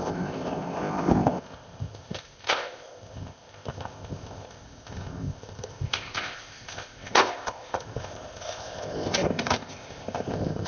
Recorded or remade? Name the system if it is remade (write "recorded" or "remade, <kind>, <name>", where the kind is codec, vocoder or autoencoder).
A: remade, codec, ZipCodec